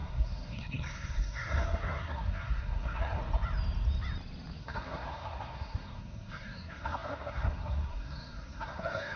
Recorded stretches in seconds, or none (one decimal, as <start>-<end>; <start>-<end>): 3.2-4.6